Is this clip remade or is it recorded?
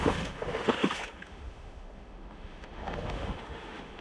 remade